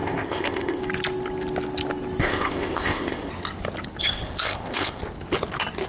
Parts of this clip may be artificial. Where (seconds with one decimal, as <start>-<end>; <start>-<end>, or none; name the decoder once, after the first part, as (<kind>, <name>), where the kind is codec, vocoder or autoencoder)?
0.0-0.8 (codec, ZipCodec); 2.2-3.3; 4.0-5.0